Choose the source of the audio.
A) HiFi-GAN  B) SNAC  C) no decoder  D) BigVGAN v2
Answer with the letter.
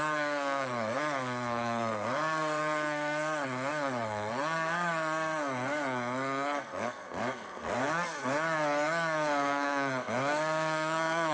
B